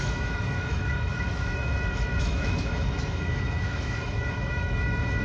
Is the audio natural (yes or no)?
no